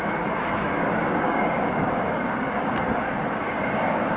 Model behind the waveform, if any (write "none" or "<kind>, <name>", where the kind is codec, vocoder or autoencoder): codec, DAC